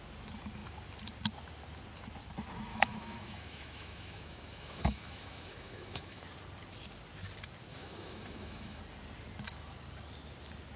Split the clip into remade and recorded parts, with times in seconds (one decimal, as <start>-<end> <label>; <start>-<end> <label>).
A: 0.0-2.7 recorded; 2.7-6.2 remade; 6.2-7.7 recorded; 7.7-8.8 remade; 8.8-10.8 recorded